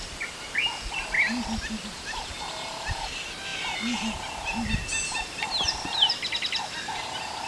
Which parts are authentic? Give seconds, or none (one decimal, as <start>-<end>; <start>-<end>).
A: 0.0-7.5